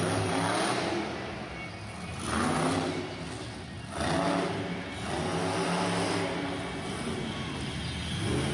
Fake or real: real